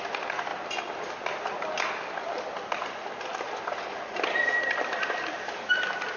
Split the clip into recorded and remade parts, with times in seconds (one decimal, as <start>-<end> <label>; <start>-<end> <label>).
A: 0.0-6.2 recorded